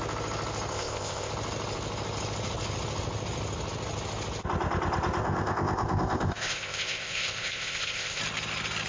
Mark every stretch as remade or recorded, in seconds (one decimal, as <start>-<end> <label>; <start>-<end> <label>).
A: 0.0-0.7 recorded; 0.7-1.3 remade; 1.3-5.2 recorded; 5.2-8.2 remade; 8.2-8.9 recorded